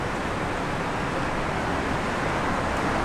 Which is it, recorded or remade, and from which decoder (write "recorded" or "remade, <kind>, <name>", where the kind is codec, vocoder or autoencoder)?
recorded